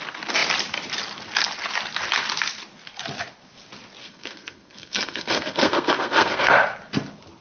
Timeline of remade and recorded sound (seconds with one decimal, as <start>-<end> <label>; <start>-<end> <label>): 0.0-4.0 recorded; 4.0-6.5 remade; 6.5-7.4 recorded